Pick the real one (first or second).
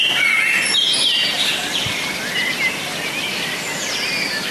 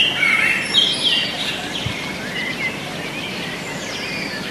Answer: first